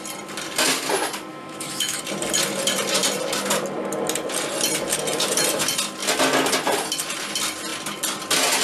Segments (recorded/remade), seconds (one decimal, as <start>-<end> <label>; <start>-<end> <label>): 0.0-1.3 recorded; 1.3-2.0 remade; 2.0-8.6 recorded